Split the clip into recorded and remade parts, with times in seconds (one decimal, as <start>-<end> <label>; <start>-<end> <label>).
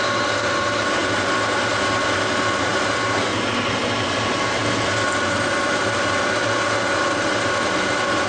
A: 0.0-8.3 recorded